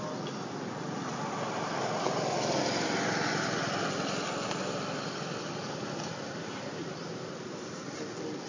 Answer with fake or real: real